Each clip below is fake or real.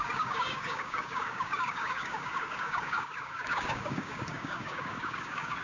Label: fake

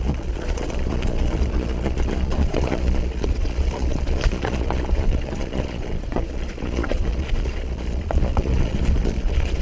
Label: fake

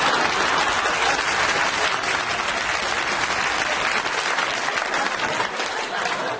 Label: real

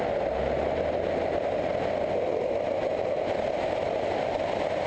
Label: real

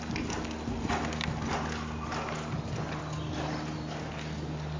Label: real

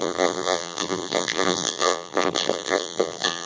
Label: fake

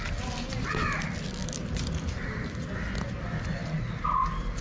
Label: real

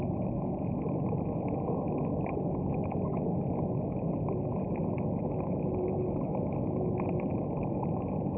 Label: real